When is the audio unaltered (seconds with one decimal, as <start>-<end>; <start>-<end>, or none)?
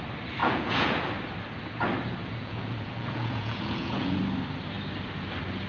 0.0-0.4; 1.0-2.2; 4.2-5.7